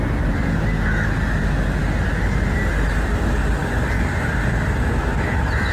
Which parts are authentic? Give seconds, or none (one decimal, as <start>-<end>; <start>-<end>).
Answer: 0.0-5.7